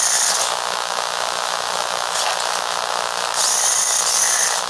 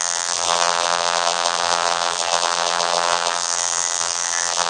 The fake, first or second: second